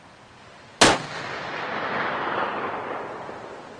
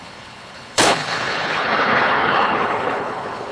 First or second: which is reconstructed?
second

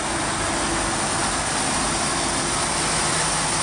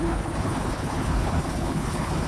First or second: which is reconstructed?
second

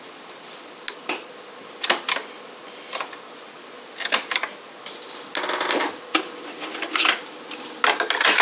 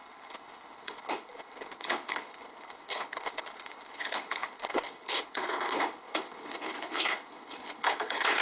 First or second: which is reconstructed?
second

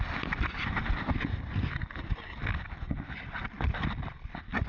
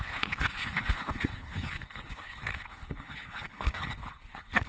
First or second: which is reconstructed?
second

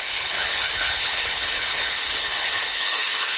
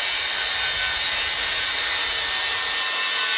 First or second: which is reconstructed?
first